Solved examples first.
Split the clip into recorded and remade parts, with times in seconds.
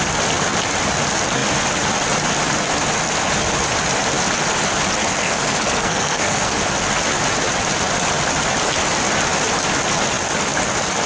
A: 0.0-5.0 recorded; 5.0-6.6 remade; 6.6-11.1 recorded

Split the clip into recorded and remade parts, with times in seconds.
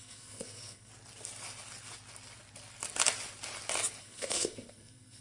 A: 0.0-0.9 remade; 0.9-4.0 recorded; 4.0-5.2 remade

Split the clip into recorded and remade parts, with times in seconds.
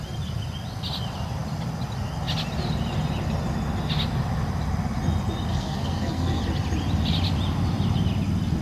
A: 0.0-5.5 recorded; 5.5-6.4 remade; 6.4-8.6 recorded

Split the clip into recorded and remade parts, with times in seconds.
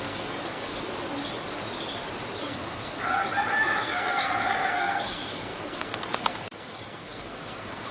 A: 0.0-0.7 remade; 0.7-2.4 recorded; 2.4-3.2 remade; 3.2-3.8 recorded; 3.8-7.9 remade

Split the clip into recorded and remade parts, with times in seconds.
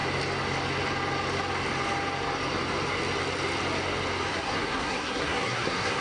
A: 0.0-4.3 recorded; 4.3-6.0 remade